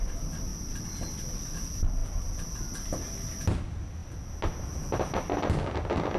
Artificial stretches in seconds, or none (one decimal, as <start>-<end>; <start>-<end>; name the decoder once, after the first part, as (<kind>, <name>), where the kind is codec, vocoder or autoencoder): none